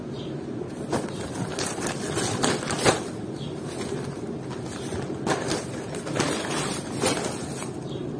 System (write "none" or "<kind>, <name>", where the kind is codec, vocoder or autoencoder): none